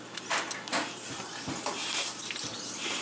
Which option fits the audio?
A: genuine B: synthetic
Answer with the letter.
A